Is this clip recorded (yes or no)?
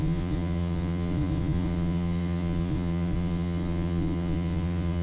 no